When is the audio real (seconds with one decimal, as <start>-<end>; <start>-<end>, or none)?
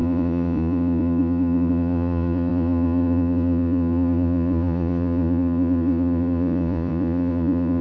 none